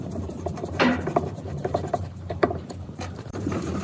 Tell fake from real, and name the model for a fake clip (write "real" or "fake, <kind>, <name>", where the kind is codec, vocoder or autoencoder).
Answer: fake, vocoder, BigVGAN v2